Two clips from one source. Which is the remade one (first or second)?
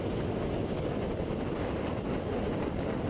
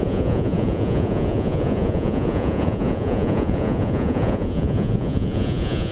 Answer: second